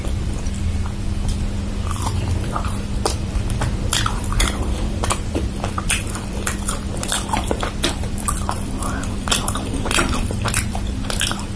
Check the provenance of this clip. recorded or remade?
remade